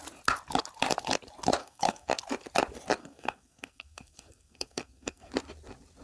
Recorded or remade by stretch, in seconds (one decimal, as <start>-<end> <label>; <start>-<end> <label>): 0.0-1.6 recorded; 1.6-2.1 remade; 2.1-3.0 recorded; 3.0-5.3 remade; 5.3-6.0 recorded